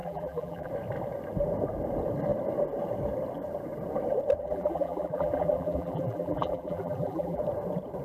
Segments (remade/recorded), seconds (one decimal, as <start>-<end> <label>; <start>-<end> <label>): 0.0-0.7 remade; 0.7-4.4 recorded; 4.4-7.4 remade; 7.4-8.0 recorded